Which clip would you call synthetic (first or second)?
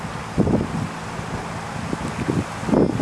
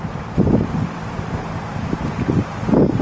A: second